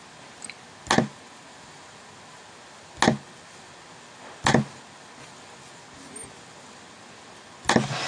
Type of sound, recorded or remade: recorded